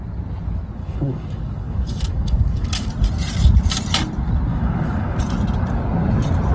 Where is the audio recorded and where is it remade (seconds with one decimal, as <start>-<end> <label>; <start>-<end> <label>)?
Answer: 0.0-0.8 recorded; 0.8-2.9 remade; 2.9-4.5 recorded; 4.5-5.2 remade; 5.2-6.5 recorded